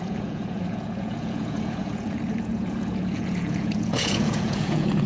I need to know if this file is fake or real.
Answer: fake